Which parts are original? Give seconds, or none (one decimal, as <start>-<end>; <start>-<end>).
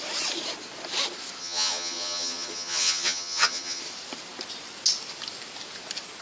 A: 0.0-1.4; 3.8-6.2